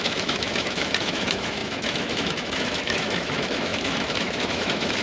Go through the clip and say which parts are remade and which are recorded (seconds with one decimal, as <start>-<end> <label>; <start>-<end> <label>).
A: 0.0-5.0 remade